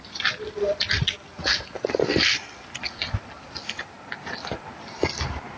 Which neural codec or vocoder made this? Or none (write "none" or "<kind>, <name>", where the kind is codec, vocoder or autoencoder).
none